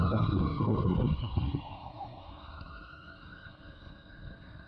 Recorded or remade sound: remade